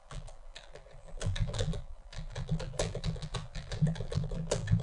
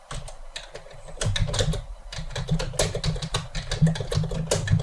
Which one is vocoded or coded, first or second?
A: first